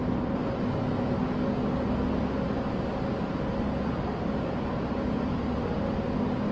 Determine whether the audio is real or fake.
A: real